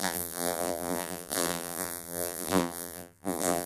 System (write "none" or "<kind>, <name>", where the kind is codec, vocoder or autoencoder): vocoder, BigVGAN v2